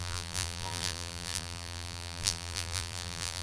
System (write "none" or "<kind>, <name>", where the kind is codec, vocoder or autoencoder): vocoder, BigVGAN v2